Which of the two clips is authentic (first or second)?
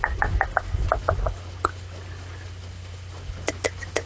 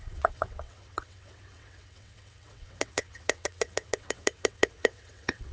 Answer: first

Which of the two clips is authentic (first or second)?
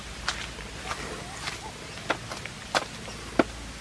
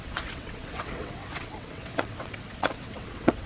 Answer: first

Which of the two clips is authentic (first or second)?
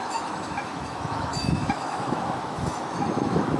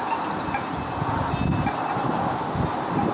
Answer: second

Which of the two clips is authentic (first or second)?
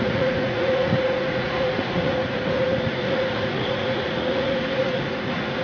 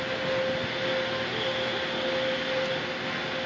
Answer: second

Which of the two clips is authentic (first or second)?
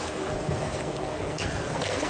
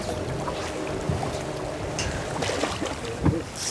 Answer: second